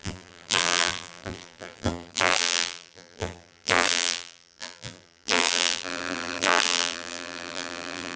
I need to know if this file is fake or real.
fake